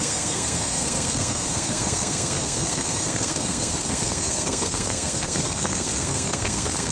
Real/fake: fake